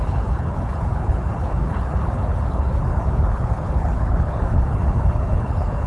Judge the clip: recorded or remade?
remade